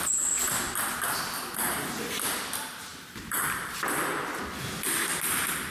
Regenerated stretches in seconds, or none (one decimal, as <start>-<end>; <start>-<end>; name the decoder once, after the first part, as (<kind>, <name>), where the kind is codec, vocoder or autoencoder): 2.9-4.4 (vocoder, BigVGAN v2)